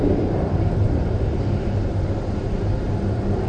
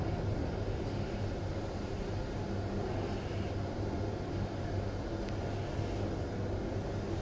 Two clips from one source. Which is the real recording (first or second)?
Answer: second